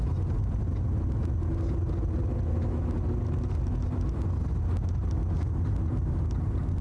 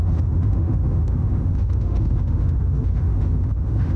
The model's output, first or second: second